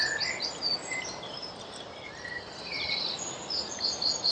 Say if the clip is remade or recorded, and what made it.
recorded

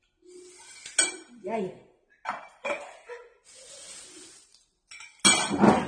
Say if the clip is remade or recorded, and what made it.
recorded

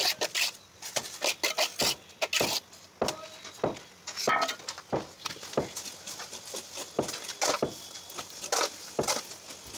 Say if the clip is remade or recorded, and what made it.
recorded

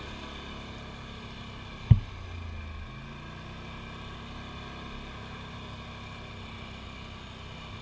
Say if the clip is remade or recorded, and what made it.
recorded